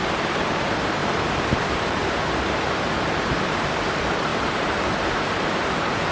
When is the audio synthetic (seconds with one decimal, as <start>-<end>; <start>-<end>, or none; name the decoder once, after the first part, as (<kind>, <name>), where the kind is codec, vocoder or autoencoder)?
0.0-1.0 (vocoder, BigVGAN v2); 1.5-6.1